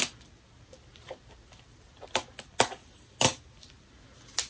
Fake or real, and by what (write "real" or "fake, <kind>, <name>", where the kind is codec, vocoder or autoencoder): real